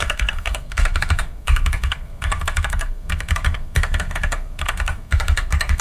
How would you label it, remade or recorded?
remade